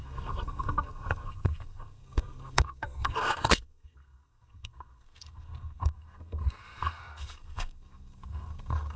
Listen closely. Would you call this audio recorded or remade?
remade